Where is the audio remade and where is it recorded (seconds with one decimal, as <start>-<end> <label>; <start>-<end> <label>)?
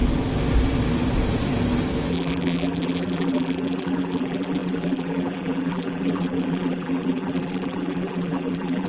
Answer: 0.0-2.1 recorded; 2.1-8.9 remade